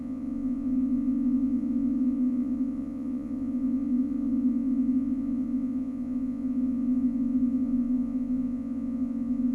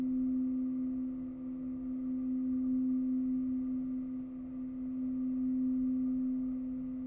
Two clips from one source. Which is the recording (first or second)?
second